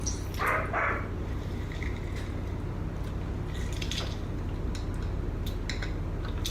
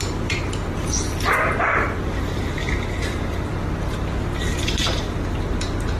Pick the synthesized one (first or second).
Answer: second